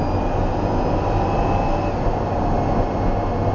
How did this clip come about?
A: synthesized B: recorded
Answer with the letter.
B